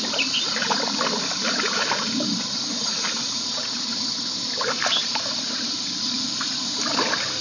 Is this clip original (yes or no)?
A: no